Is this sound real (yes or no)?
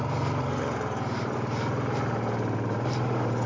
no